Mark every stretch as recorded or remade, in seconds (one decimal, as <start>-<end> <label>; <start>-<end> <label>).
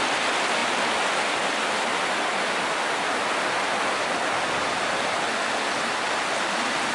0.0-0.6 recorded; 0.6-1.9 remade; 1.9-6.9 recorded